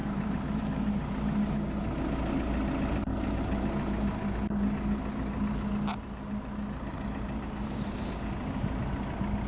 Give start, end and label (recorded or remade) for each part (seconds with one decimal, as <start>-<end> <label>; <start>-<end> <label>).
0.0-9.5 recorded